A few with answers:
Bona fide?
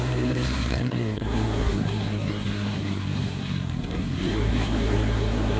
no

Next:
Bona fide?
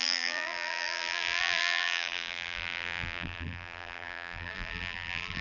no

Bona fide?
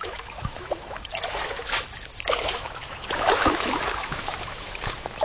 no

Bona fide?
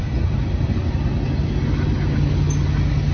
yes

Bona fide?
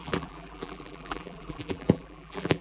no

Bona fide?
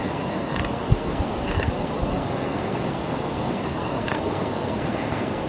no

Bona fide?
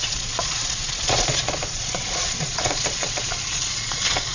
no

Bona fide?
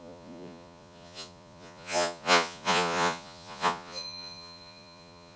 no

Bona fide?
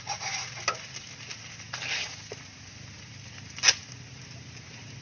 yes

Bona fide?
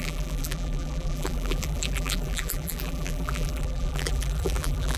no